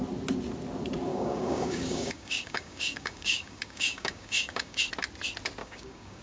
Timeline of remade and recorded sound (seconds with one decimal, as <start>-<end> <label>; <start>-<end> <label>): 0.0-1.1 recorded; 1.1-4.8 remade; 4.8-5.6 recorded; 5.6-6.2 remade